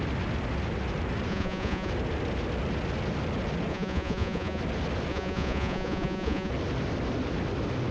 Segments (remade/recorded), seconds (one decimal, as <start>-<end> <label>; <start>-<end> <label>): 0.0-1.3 recorded; 1.3-1.9 remade; 1.9-3.7 recorded; 3.7-4.6 remade; 4.6-5.1 recorded; 5.1-6.5 remade; 6.5-7.9 recorded